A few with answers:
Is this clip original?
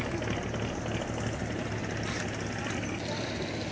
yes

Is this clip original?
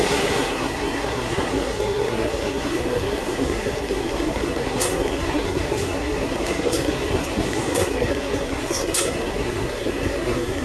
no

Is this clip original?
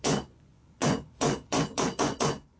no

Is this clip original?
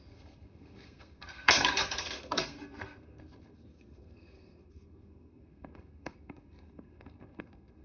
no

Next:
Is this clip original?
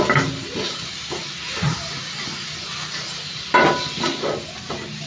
yes